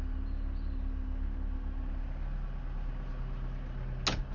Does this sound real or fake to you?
real